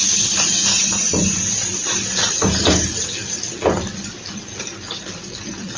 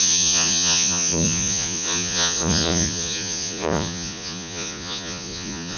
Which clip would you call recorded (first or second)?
first